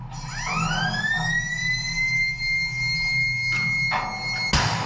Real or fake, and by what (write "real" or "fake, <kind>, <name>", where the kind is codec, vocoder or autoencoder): real